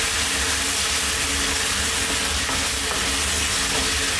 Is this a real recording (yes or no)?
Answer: yes